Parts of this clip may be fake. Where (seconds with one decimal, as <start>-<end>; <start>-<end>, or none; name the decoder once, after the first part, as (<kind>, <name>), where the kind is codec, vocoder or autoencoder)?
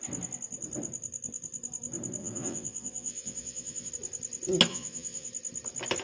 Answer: 2.2-3.9 (vocoder, Vocos); 4.7-5.3